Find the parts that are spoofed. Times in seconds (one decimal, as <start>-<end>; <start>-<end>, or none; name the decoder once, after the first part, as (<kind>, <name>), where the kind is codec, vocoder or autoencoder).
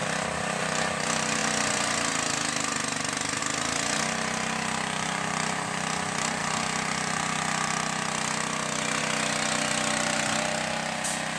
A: none